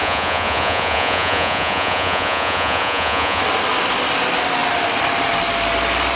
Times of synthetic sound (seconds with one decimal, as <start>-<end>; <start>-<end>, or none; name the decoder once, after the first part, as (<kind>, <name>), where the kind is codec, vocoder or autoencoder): 0.0-3.4 (vocoder, Vocos)